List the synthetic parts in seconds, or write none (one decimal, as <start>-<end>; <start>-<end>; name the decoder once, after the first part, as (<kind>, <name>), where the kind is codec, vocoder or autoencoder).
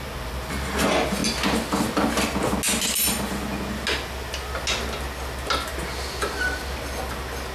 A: none